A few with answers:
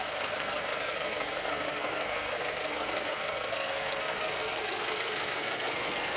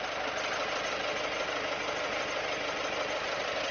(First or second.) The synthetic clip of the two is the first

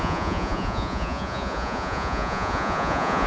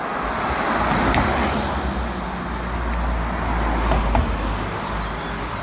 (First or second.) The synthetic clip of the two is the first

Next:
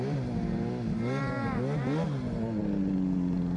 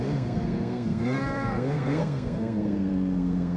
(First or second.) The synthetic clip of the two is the second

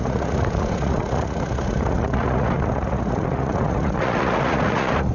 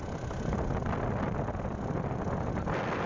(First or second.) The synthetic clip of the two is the first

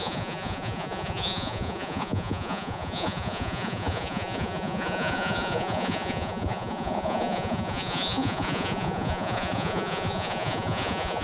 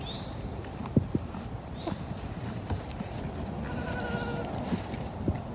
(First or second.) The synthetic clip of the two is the first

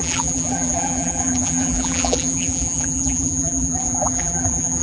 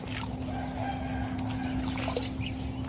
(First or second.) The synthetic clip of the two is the first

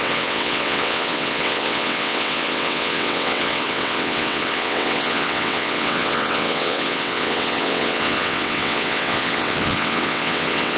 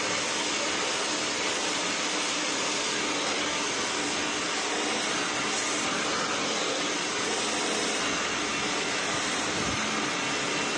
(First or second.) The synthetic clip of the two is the first